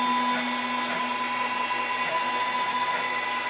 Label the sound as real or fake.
real